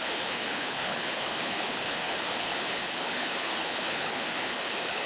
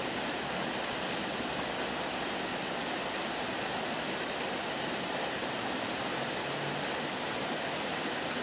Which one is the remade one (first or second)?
first